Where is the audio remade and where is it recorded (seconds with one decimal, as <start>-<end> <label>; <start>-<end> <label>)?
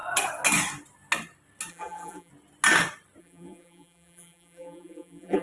0.0-1.7 recorded; 1.7-2.3 remade; 2.3-3.2 recorded; 3.2-5.4 remade